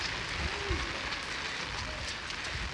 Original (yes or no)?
yes